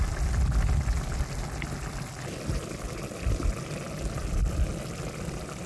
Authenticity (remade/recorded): recorded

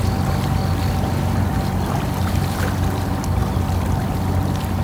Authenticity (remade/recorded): recorded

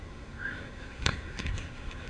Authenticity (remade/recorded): remade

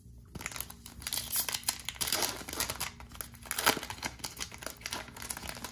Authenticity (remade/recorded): recorded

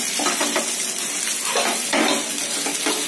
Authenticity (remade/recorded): recorded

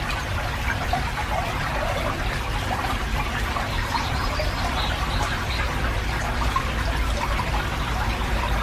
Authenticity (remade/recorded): recorded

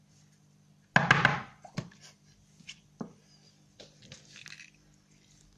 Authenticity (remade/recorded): recorded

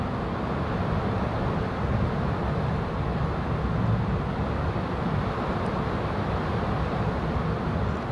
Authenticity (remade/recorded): recorded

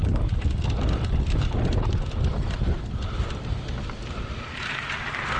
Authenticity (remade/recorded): recorded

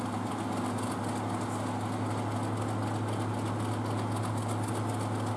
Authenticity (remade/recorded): recorded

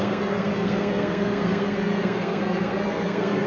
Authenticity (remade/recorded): remade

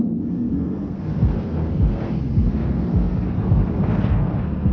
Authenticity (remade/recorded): remade